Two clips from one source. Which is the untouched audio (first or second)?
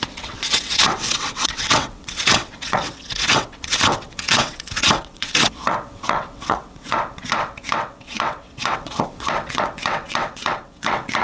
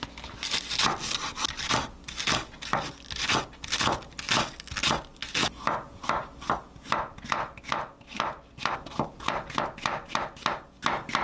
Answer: second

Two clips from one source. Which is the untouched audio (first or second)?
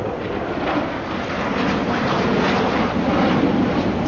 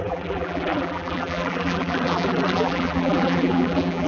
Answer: first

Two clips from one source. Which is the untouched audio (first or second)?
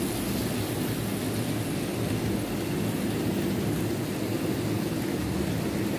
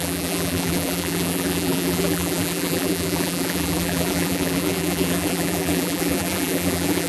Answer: first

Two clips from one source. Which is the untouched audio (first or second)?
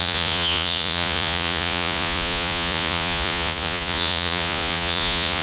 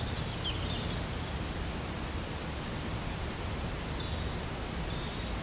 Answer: second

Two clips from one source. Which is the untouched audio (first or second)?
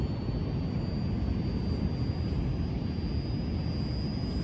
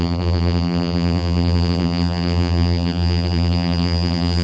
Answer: first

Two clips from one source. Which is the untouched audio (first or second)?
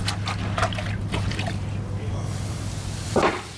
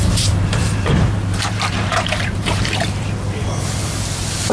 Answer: first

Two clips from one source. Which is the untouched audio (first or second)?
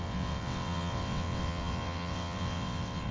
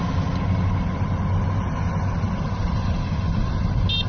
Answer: second